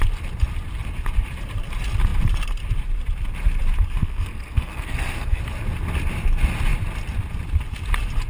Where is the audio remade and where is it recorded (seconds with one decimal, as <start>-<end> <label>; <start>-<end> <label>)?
0.0-4.0 recorded; 4.0-5.4 remade; 5.4-8.3 recorded